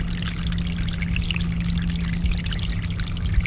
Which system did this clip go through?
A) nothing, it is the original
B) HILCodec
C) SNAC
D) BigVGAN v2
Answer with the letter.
A